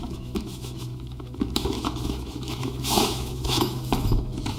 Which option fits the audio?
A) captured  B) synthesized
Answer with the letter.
B